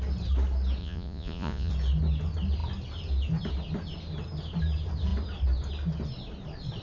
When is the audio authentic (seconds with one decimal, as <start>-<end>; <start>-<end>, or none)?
0.0-0.8; 1.7-6.8